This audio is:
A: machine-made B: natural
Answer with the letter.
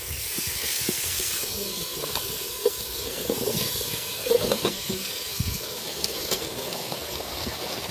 A